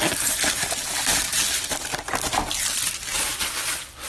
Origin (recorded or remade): recorded